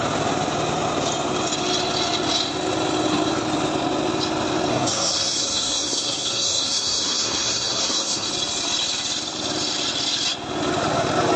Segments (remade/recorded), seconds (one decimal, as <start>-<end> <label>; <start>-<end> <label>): 0.0-4.7 recorded; 4.7-8.3 remade; 8.3-11.4 recorded

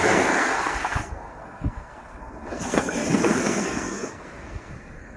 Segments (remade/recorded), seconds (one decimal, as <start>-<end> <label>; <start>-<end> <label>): 0.0-5.2 remade

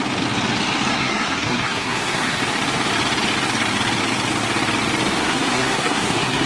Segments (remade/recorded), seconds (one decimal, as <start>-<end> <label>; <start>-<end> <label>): 0.0-0.9 recorded; 0.9-2.4 remade; 2.4-5.2 recorded; 5.2-6.5 remade